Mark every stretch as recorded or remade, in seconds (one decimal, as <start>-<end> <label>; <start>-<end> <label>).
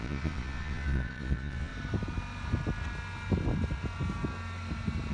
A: 0.0-1.7 remade; 1.7-5.1 recorded